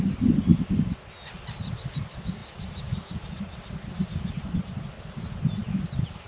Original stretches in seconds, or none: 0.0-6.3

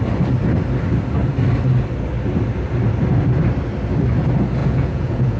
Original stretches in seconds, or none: 0.0-4.6

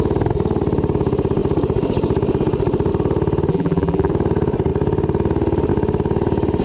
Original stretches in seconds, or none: 0.0-3.5; 4.1-6.6

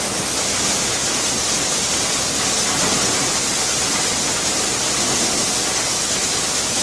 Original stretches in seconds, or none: 0.0-5.9

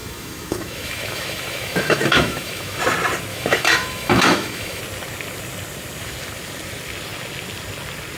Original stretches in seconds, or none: 2.8-3.3; 4.8-8.2

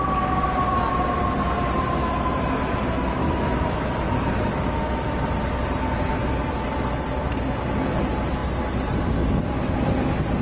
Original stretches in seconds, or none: 0.0-2.0; 5.2-10.4

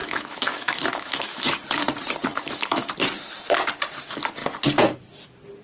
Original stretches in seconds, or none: 1.4-2.3; 2.9-5.6